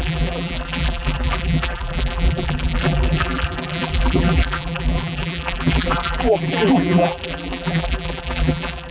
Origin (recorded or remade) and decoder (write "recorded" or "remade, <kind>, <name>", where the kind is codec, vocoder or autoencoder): remade, vocoder, BigVGAN v2